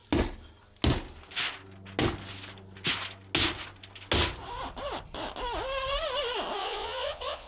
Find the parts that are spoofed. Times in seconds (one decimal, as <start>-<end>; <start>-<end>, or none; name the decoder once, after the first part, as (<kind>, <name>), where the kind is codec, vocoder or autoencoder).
6.6-7.5 (vocoder, Vocos)

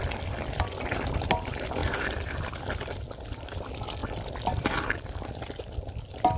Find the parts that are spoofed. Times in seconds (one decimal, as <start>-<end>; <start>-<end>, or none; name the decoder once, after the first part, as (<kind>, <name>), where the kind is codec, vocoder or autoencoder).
none

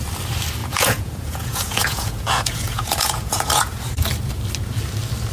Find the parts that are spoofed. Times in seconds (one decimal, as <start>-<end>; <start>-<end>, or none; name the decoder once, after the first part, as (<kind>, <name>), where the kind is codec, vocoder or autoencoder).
0.6-3.8 (vocoder, Vocos)

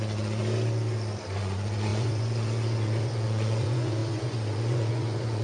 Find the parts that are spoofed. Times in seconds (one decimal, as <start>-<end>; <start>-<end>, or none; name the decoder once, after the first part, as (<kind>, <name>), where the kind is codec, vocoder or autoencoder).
0.0-0.4 (vocoder, Vocos); 1.4-5.4

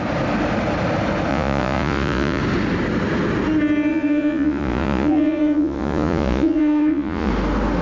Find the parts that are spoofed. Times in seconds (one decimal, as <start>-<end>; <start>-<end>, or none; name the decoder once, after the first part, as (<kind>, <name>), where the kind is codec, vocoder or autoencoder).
1.3-2.4 (vocoder, Vocos); 3.9-7.3

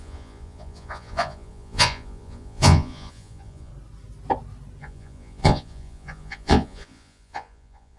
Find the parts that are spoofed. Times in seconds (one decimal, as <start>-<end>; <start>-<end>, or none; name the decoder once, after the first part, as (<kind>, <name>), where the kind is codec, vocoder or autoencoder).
0.0-3.7 (vocoder, Vocos); 4.8-8.0

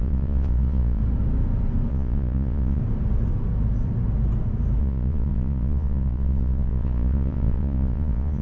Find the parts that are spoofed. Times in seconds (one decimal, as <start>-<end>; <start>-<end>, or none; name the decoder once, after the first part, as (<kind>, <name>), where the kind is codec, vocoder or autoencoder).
0.0-1.0 (vocoder, Vocos); 1.9-2.8; 4.8-8.4

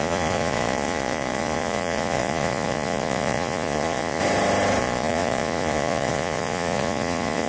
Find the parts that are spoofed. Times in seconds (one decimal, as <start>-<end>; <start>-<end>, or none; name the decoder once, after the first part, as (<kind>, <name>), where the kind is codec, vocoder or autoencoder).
0.0-4.2 (vocoder, Vocos); 4.8-7.5